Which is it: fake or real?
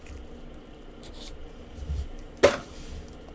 real